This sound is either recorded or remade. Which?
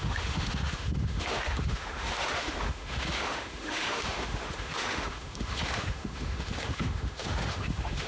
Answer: remade